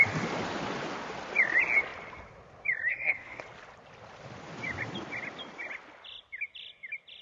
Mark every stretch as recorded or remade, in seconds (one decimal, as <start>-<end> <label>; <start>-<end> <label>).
0.0-2.9 recorded; 2.9-3.4 remade; 3.4-7.2 recorded